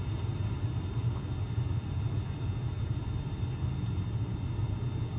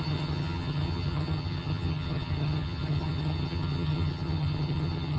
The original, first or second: first